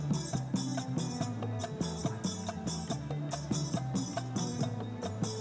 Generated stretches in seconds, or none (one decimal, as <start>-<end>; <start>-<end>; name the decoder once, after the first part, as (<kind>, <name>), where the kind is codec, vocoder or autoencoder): none